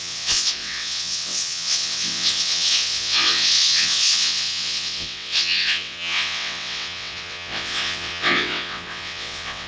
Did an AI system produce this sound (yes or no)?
yes